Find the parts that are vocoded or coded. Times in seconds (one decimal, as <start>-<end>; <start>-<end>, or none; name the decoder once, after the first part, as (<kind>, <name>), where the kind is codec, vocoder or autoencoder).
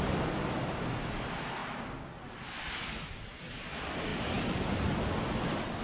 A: none